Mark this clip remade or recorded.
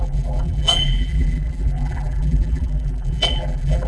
remade